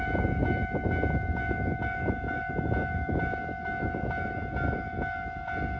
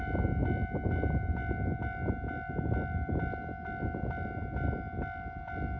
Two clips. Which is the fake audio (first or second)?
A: first